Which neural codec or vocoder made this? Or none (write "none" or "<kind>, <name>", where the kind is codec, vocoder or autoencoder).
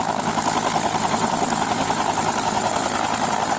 none